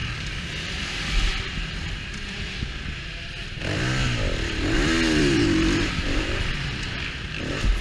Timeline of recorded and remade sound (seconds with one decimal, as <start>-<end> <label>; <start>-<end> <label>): 0.0-1.9 remade; 1.9-3.4 recorded; 3.4-6.4 remade; 6.4-7.8 recorded